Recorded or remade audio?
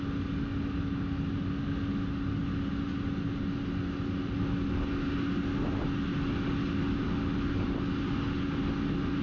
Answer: recorded